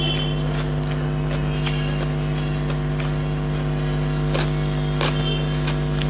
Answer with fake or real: real